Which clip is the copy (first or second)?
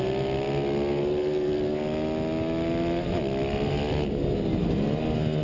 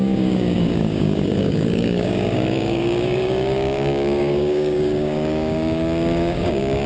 second